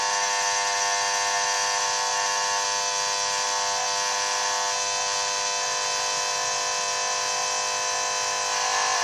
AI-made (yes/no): no